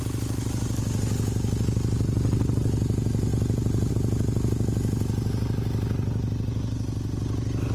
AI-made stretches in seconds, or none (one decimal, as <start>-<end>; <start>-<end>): 3.3-3.9